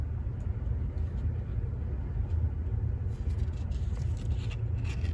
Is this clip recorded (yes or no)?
yes